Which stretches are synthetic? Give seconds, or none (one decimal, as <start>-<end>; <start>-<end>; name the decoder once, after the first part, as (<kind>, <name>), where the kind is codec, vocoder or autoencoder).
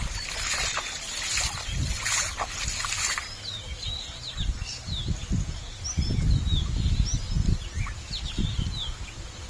none